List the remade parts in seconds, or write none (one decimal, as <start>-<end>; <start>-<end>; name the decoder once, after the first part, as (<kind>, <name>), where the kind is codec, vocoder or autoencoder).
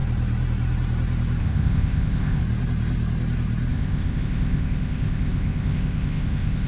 1.4-2.4 (codec, ZipCodec); 3.7-6.7